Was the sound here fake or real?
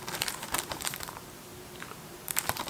fake